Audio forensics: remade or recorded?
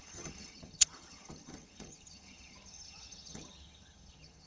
remade